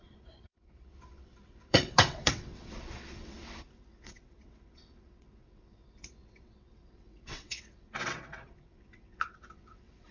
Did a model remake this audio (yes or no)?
yes